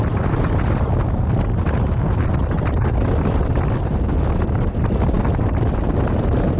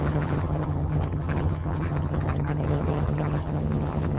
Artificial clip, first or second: second